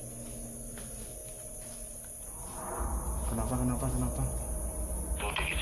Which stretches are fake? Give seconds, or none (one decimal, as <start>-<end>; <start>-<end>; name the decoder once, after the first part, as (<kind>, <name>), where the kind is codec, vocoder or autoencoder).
none